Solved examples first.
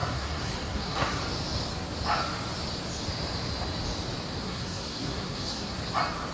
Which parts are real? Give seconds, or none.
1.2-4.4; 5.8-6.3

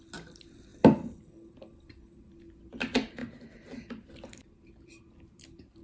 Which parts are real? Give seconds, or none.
0.0-3.2; 3.8-5.8

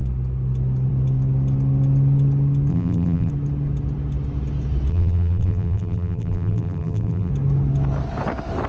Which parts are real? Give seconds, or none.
0.0-2.7; 3.3-4.9; 7.3-8.7

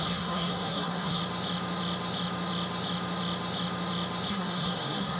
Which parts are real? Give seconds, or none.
1.2-4.3